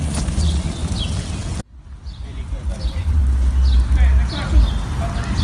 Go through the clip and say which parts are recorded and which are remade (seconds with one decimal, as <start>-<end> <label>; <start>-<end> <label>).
0.0-0.8 remade; 0.8-2.2 recorded; 2.2-3.2 remade; 3.2-5.4 recorded